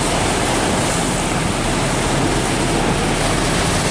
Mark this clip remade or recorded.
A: recorded